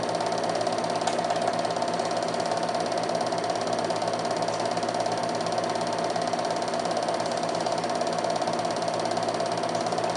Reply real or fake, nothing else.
real